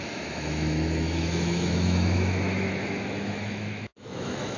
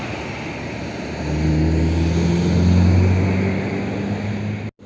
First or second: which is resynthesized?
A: first